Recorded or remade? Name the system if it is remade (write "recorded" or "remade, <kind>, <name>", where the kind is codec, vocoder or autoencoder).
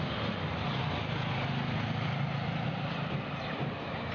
recorded